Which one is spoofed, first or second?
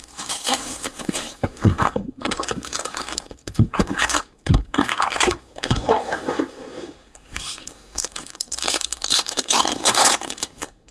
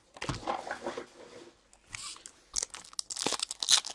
first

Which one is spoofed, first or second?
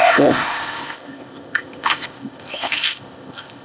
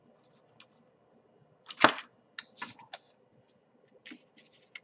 first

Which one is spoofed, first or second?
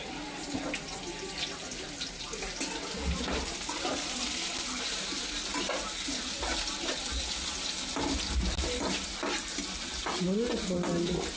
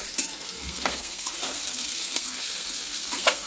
second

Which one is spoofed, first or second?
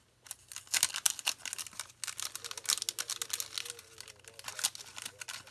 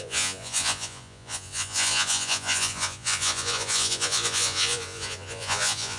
second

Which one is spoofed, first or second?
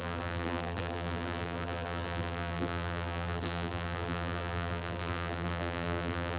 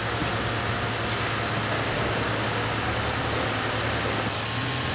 first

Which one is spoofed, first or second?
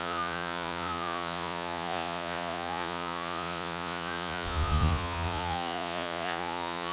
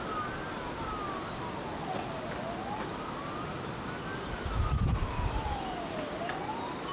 first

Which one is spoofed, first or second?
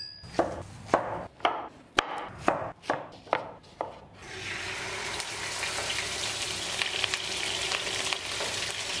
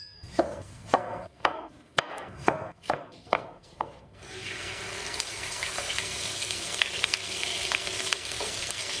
second